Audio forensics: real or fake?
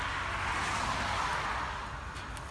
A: real